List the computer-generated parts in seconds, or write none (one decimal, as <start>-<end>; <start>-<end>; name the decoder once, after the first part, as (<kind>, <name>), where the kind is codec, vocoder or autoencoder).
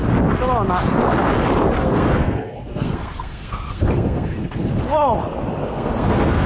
1.8-4.7 (codec, SNAC); 5.6-6.5